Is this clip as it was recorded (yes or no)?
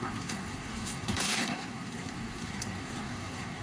no